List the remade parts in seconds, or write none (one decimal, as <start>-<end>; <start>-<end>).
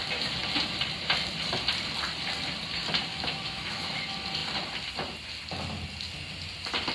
3.1-4.0